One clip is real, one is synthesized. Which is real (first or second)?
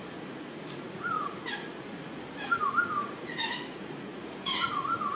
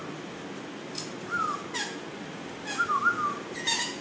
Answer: second